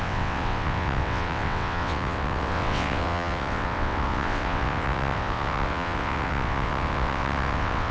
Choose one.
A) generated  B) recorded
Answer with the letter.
A